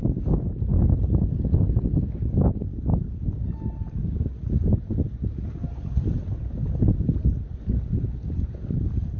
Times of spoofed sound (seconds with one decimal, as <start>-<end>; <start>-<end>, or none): none